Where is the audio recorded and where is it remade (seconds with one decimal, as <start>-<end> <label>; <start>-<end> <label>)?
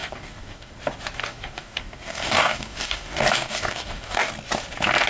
0.0-0.7 remade; 0.7-1.2 recorded; 1.2-4.3 remade; 4.3-5.1 recorded